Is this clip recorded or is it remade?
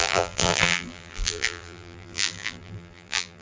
remade